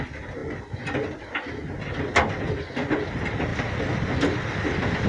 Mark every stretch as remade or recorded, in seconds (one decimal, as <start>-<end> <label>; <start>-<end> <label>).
0.0-5.1 recorded